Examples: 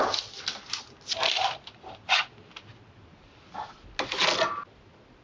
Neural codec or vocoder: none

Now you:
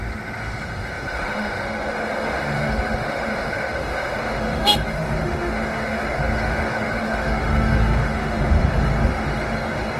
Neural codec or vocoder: autoencoder, DAC-VAE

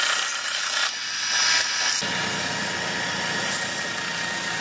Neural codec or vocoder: none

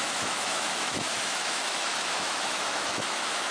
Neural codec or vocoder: autoencoder, DAC-VAE